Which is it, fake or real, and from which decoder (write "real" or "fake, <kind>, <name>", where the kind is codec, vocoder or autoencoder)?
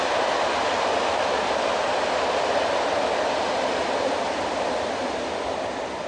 real